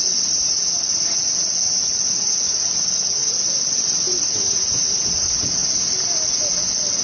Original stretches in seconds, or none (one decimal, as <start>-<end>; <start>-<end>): 0.0-3.2; 4.8-5.6; 6.5-7.0